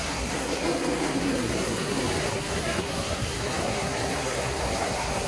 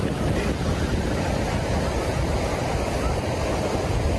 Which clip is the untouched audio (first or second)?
second